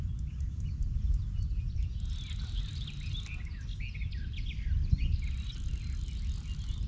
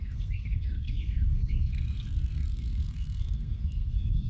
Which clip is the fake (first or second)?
second